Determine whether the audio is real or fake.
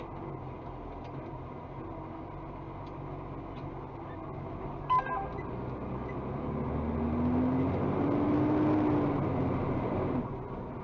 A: real